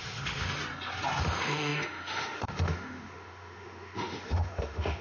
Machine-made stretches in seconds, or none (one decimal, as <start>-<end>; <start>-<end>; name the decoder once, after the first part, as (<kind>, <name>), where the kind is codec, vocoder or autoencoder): 0.0-0.6 (autoencoder, DAC-VAE); 1.2-5.0